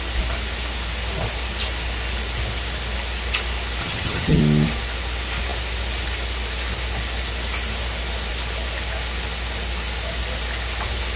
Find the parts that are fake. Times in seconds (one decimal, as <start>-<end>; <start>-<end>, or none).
3.8-4.4